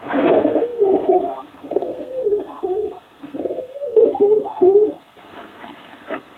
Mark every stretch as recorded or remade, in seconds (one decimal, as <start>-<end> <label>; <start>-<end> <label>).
0.0-6.4 remade